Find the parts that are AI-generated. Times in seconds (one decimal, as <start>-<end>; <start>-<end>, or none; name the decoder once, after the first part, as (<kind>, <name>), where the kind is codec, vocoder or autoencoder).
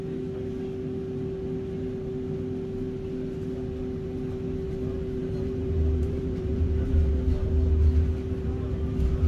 5.2-7.1 (vocoder, BigVGAN v2)